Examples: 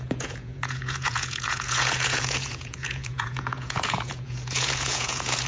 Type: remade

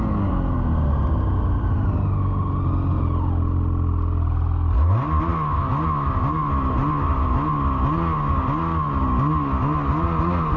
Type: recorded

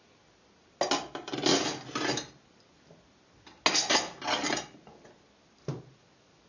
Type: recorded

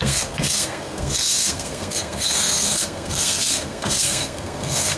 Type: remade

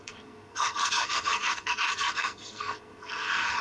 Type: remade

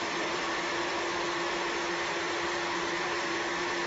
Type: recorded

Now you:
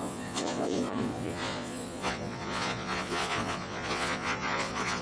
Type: remade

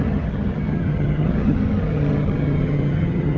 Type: remade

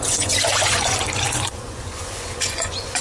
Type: remade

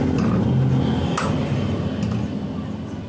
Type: recorded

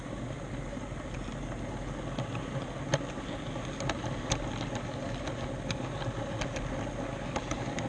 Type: recorded